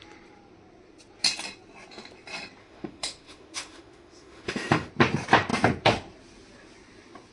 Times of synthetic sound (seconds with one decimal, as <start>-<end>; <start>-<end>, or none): 2.6-4.9

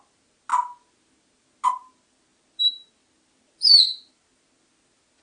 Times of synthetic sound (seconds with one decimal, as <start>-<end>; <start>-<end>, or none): none